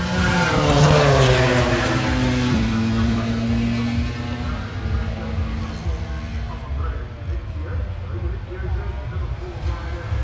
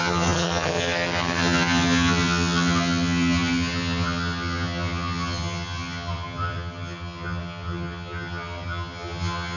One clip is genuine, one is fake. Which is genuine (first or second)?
first